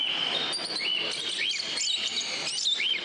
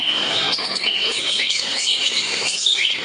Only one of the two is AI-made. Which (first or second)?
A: second